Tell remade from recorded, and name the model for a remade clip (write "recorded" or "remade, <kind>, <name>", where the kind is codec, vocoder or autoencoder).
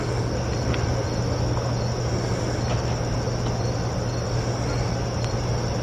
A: recorded